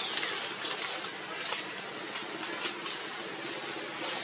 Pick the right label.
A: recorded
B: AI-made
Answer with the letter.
A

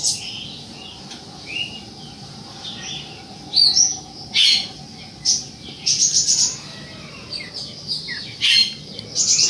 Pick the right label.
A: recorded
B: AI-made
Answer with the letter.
A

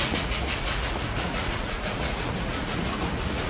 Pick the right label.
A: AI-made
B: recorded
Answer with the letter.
A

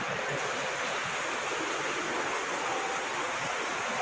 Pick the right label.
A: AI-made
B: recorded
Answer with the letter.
B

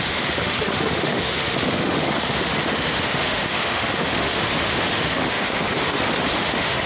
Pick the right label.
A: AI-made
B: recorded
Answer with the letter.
A